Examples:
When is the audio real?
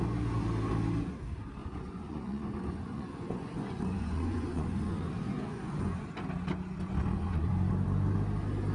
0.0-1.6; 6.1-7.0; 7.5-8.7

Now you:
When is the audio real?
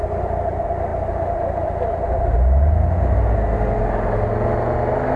0.0-5.2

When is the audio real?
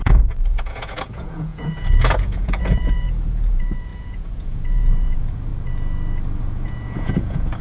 5.5-6.4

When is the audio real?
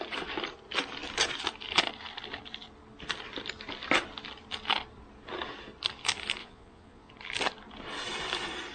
0.0-6.4; 7.1-8.7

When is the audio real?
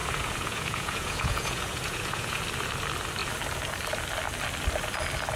2.4-5.4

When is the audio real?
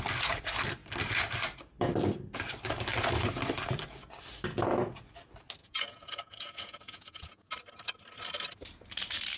0.0-5.6; 7.5-9.4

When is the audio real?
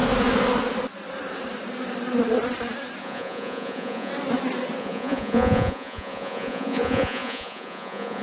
0.0-3.0; 4.1-4.8